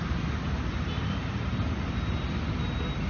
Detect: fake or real real